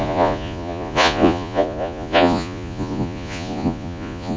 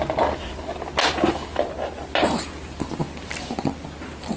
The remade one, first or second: first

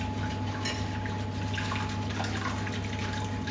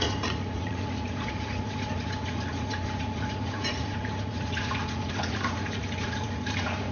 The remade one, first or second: second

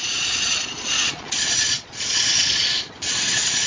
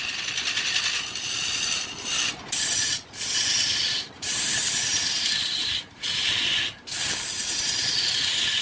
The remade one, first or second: first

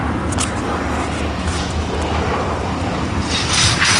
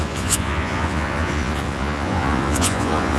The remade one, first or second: second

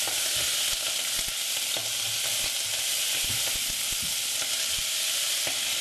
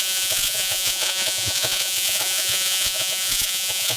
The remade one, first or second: second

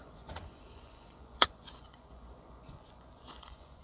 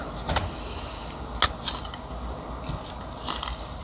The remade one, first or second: first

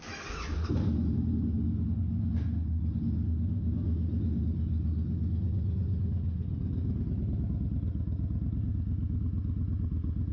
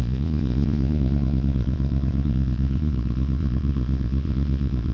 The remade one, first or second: second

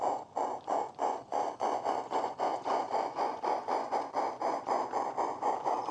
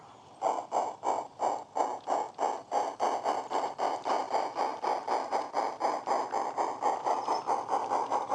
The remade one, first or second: first